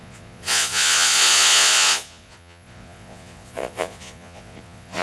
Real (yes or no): no